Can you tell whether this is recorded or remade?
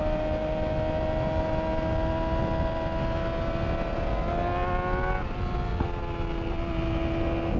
recorded